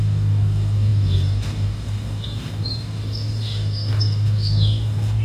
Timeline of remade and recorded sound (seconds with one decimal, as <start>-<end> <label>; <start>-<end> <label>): 0.0-5.2 remade